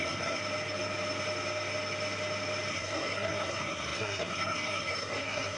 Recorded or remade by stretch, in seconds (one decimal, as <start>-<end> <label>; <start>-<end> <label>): 0.0-0.4 remade; 0.4-2.7 recorded; 2.7-5.6 remade